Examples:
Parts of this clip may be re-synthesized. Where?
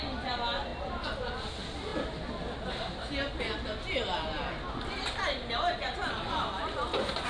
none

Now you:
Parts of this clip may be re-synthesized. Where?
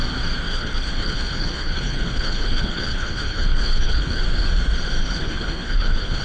0.5-4.2 (codec, HILCodec); 5.0-6.2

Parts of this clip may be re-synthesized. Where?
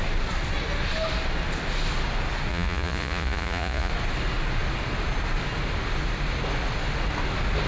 2.5-3.9 (vocoder, Vocos)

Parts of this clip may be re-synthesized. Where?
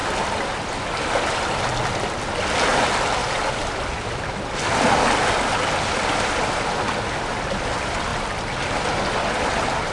none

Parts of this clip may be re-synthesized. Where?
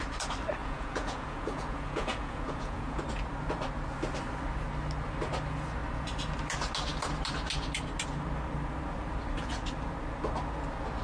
0.6-3.0 (vocoder, Vocos)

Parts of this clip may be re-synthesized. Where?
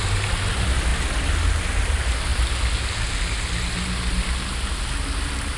none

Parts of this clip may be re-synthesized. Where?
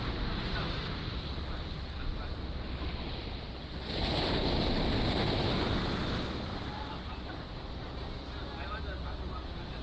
none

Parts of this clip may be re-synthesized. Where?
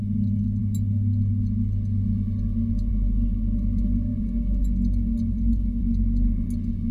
none